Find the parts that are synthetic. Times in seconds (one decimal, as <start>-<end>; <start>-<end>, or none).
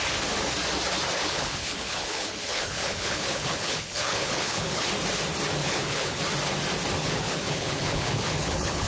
1.2-4.9; 5.6-6.2; 7.0-8.9